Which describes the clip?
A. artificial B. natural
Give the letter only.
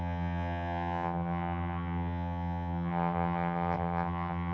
A